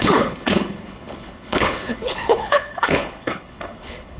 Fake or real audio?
fake